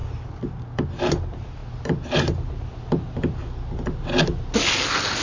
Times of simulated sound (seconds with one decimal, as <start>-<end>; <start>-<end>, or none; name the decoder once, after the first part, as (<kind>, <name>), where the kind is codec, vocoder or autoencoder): none